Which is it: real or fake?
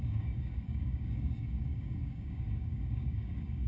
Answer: fake